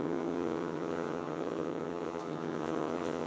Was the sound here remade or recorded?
remade